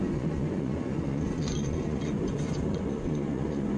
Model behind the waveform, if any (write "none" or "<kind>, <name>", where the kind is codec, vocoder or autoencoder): vocoder, Vocos